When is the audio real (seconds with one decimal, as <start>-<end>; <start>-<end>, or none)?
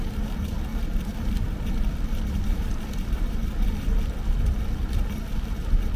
0.0-0.7; 4.3-6.0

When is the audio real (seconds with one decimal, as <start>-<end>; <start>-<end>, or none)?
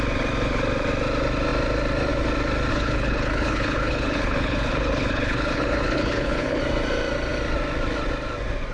0.0-2.7; 6.6-8.7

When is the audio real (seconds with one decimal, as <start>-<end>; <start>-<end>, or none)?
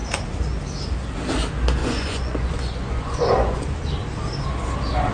0.0-1.8; 3.6-5.1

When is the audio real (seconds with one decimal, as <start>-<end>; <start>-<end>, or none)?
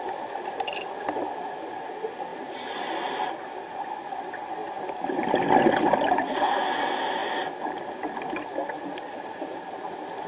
0.0-10.3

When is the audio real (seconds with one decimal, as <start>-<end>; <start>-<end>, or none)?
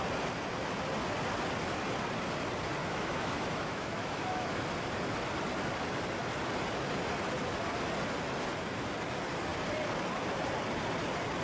0.0-2.8; 4.6-11.4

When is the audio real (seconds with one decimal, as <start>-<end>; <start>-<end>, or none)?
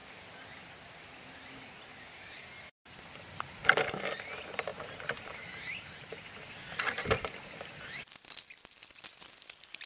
0.0-4.7; 6.1-9.9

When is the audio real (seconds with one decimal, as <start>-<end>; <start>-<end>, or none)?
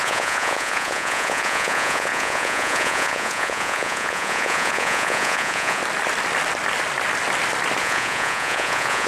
5.8-7.8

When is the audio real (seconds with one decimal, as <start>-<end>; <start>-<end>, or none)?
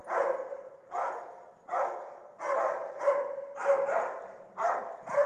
0.0-5.3